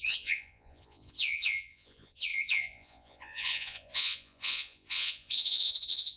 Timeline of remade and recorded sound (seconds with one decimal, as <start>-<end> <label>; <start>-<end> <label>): 0.0-6.2 remade